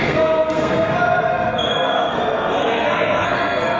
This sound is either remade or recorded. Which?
remade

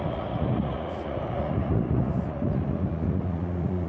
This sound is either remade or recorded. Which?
remade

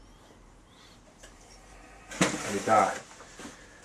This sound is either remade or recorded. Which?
remade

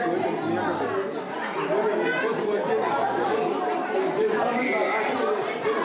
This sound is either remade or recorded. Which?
recorded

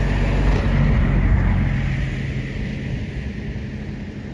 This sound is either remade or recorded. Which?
recorded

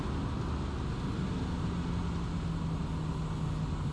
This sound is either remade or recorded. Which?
recorded